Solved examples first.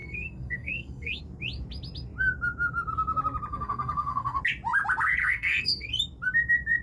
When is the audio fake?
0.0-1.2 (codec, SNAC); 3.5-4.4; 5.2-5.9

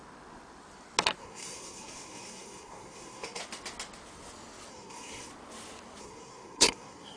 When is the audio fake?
1.2-3.4 (codec, SNAC); 4.7-5.3; 6.0-7.2

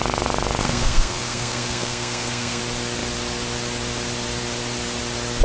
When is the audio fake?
0.6-2.6 (codec, SNAC)

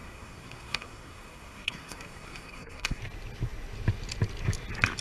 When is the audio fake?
0.0-3.0 (codec, SNAC)